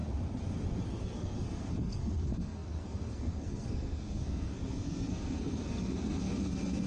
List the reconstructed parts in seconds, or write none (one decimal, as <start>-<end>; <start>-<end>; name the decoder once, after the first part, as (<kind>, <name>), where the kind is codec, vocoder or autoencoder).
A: 0.9-6.9 (codec, SNAC)